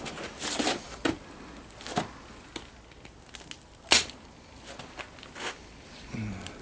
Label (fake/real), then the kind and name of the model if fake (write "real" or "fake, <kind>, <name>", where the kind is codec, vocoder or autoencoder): real